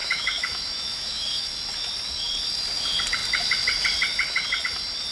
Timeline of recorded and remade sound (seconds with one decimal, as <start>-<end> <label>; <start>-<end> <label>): 0.0-1.5 remade; 1.5-5.1 recorded